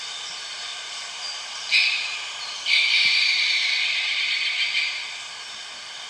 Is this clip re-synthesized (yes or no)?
yes